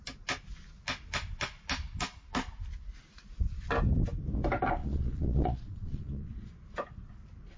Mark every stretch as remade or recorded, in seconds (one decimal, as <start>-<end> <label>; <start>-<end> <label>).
0.0-4.8 recorded; 4.8-6.5 remade; 6.5-7.6 recorded